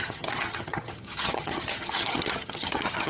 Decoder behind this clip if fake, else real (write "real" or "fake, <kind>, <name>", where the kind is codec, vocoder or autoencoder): fake, vocoder, HiFi-GAN